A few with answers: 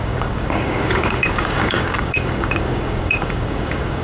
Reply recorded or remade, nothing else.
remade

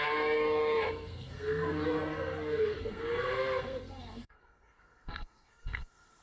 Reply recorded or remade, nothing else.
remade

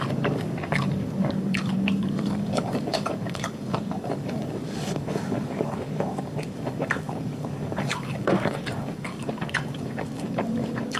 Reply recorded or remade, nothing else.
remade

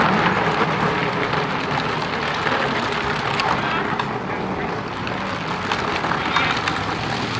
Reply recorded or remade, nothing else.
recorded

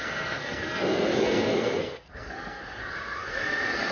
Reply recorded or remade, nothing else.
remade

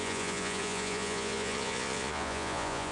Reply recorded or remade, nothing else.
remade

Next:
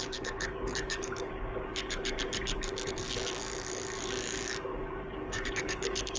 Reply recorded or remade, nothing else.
remade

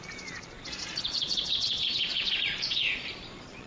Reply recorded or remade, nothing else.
remade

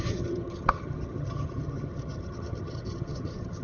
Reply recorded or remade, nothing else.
remade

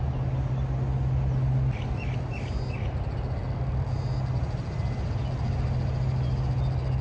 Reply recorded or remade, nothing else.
recorded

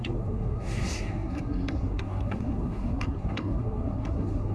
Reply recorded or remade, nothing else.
remade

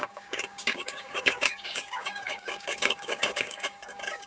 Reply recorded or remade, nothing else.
remade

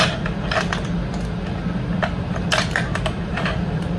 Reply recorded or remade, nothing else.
recorded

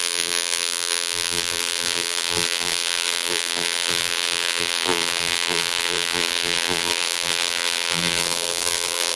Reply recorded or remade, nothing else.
remade